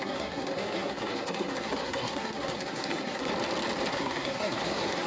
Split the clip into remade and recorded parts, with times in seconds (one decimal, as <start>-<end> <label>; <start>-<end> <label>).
0.0-3.3 remade; 3.3-3.9 recorded; 3.9-5.1 remade